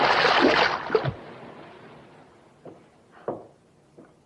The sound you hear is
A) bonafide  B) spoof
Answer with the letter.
A